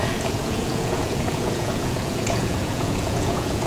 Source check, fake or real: fake